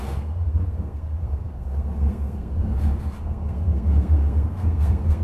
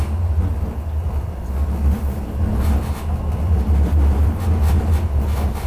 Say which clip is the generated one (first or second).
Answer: first